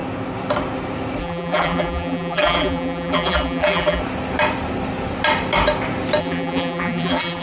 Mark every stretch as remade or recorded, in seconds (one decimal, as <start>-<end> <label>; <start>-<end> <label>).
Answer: 0.0-1.2 recorded; 1.2-4.0 remade; 4.0-6.2 recorded; 6.2-7.4 remade